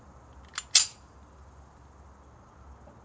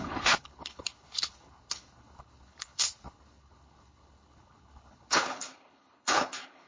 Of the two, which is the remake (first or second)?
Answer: second